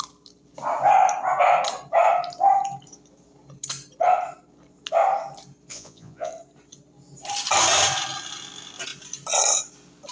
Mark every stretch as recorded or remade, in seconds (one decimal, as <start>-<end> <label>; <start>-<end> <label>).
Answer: 0.0-5.7 recorded; 5.7-6.3 remade; 6.3-10.1 recorded

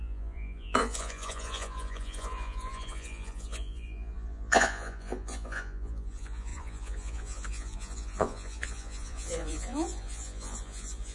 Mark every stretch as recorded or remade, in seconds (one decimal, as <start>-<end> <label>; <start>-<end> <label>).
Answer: 0.0-11.1 remade

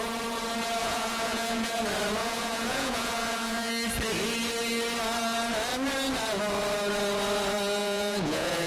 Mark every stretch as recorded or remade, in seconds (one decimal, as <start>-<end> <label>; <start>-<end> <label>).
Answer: 0.0-0.8 recorded; 0.8-1.8 remade; 1.8-2.2 recorded; 2.2-3.7 remade; 3.7-7.8 recorded; 7.8-8.7 remade

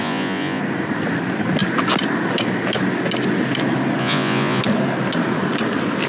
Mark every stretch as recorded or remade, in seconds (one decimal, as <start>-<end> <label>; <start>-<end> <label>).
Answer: 0.0-0.6 remade; 0.6-4.0 recorded; 4.0-4.6 remade; 4.6-6.1 recorded

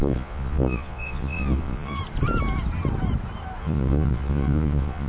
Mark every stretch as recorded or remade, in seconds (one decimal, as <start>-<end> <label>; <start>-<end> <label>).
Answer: 0.0-2.0 remade; 2.0-3.6 recorded; 3.6-5.1 remade

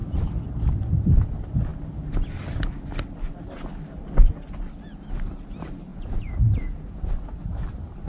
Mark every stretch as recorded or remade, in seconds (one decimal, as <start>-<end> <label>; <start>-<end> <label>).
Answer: 0.0-5.9 recorded; 5.9-7.1 remade; 7.1-8.1 recorded

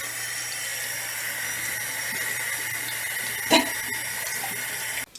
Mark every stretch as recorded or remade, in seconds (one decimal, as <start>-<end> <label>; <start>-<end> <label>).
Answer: 0.0-5.2 recorded

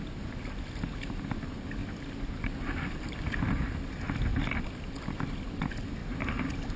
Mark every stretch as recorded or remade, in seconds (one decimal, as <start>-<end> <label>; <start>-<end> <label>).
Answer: 0.0-6.8 recorded